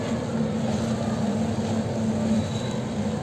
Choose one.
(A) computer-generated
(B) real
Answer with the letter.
B